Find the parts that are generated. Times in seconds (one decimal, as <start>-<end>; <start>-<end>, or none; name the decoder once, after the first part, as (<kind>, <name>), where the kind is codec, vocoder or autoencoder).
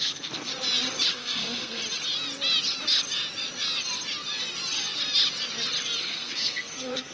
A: 0.0-0.5 (codec, SNAC); 1.1-1.8; 6.0-7.1